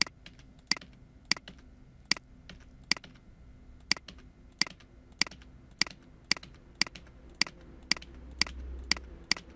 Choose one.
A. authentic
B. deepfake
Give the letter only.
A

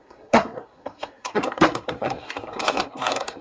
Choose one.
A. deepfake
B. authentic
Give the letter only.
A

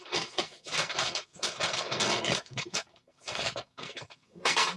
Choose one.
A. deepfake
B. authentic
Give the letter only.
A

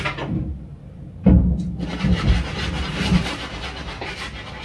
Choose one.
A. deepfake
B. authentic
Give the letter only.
B